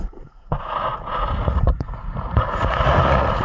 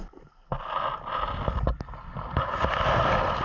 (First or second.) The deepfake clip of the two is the first